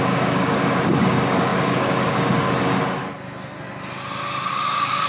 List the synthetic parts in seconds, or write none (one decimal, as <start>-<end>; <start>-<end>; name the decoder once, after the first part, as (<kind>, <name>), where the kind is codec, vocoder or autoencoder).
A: 0.0-3.0 (codec, DAC); 4.5-5.1